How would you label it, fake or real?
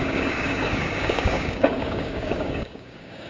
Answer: fake